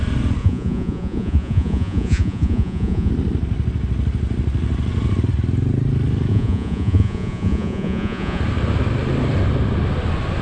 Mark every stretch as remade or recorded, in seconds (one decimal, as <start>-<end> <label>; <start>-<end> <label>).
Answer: 0.0-0.4 recorded; 0.4-3.1 remade; 3.1-6.3 recorded; 6.3-8.4 remade; 8.4-10.4 recorded